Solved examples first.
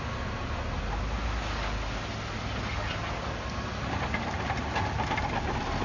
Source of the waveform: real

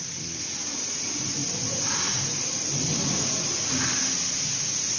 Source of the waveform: real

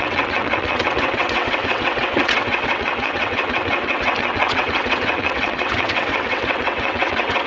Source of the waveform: fake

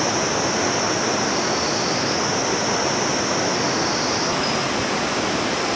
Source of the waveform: real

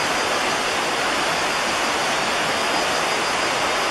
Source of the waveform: real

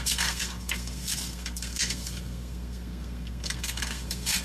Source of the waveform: fake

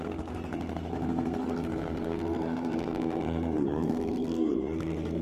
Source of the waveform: fake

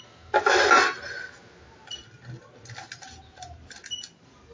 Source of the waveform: real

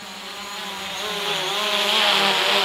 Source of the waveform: real